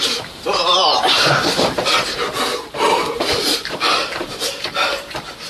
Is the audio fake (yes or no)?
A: yes